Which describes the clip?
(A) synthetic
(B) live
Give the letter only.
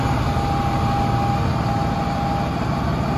B